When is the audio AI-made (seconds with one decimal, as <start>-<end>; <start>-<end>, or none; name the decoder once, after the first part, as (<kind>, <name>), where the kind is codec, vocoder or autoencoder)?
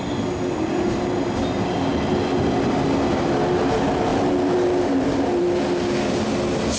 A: none